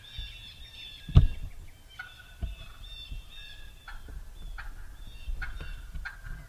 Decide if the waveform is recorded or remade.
recorded